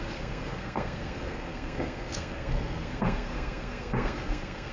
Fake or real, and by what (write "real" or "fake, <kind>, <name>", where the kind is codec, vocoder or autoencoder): fake, codec, SNAC